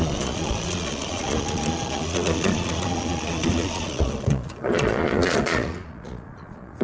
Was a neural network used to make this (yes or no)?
yes